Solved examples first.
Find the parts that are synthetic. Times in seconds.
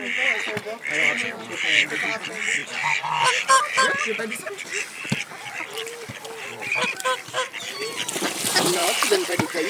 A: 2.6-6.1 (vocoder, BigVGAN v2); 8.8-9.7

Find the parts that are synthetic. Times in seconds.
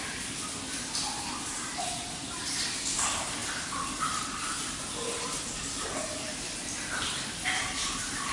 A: 3.4-3.9 (vocoder, BigVGAN v2); 5.0-6.3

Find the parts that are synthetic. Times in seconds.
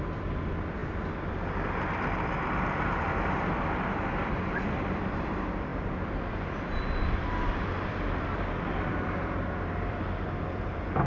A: 0.0-0.8 (vocoder, BigVGAN v2); 3.5-5.7; 6.3-11.1